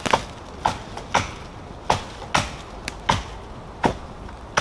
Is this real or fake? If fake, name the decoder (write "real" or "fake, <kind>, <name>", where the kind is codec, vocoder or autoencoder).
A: real